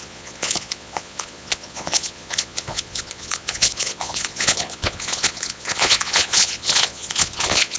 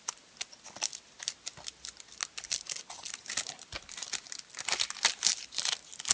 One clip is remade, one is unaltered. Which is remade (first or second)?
first